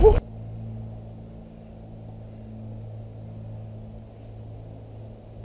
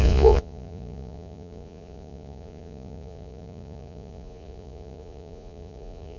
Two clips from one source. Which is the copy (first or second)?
second